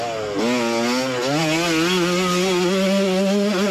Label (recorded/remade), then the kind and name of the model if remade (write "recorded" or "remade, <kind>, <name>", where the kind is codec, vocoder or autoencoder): recorded